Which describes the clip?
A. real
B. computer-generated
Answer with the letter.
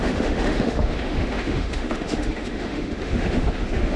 B